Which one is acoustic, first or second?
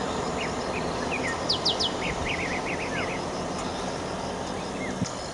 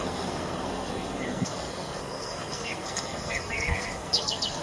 first